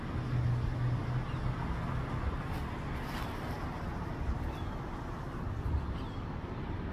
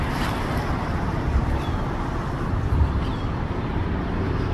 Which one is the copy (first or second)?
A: second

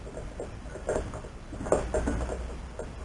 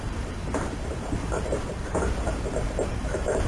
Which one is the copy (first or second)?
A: second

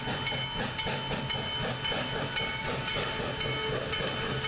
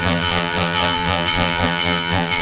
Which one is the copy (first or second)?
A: second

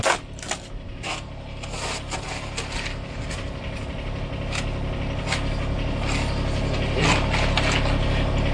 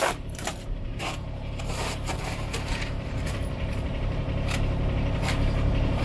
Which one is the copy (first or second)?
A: second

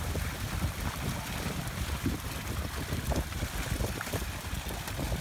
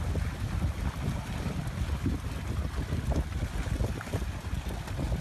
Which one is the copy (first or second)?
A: first